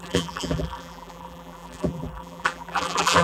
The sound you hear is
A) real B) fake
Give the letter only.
B